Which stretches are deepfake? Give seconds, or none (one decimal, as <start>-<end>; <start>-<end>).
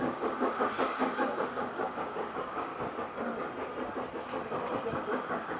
0.0-2.7; 4.1-4.6; 5.1-5.6